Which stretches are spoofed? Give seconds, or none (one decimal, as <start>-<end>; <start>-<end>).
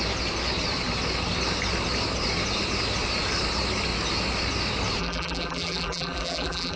5.0-6.8